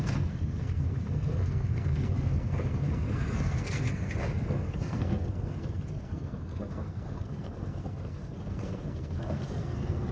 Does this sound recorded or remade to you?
remade